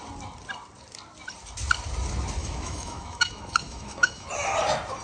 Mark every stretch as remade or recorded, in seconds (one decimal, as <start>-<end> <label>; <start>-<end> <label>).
0.0-2.4 recorded; 2.4-4.3 remade; 4.3-5.0 recorded